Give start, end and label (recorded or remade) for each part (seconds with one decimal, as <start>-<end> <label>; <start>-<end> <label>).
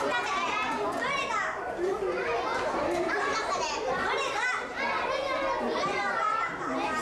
0.0-2.5 recorded; 2.5-4.8 remade; 4.8-7.0 recorded